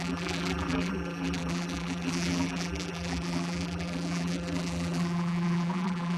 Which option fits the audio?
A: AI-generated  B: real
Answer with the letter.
A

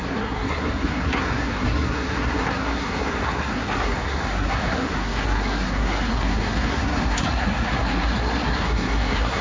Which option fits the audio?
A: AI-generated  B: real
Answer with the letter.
A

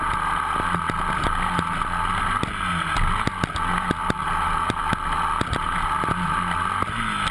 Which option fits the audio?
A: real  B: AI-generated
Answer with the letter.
A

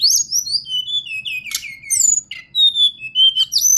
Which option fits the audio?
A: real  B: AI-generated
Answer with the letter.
A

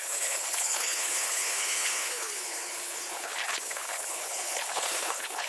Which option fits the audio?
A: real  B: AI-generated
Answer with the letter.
B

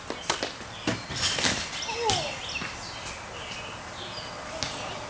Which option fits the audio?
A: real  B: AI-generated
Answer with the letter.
A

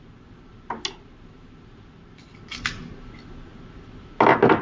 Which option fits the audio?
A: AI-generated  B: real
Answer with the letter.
B